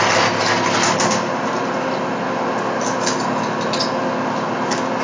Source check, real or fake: real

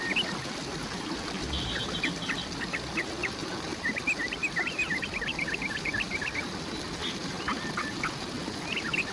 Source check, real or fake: real